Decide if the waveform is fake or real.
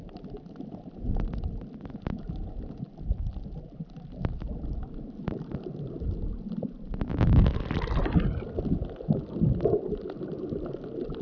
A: real